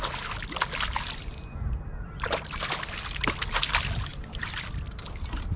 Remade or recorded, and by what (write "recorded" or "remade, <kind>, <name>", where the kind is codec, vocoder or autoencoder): recorded